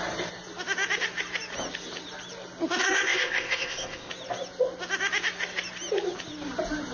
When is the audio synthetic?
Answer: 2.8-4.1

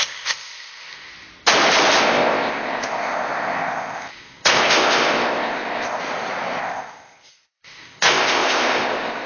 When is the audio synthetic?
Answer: 0.0-1.1; 2.0-6.0; 6.6-9.3

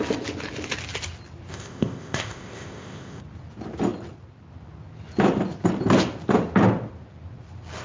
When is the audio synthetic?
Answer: 1.5-3.2

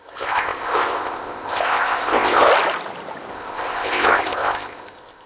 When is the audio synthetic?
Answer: 0.0-2.5; 3.3-5.3